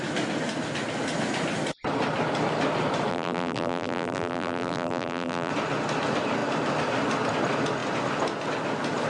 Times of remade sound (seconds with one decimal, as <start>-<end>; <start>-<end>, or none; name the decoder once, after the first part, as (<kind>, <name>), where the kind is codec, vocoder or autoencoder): 3.1-5.5 (vocoder, BigVGAN v2)